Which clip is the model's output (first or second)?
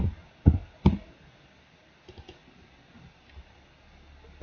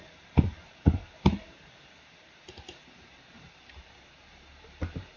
second